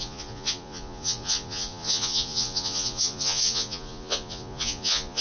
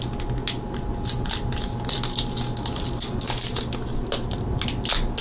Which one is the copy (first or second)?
first